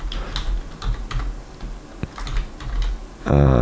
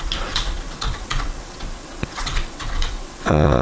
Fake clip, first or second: second